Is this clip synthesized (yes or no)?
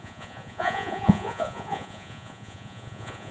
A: yes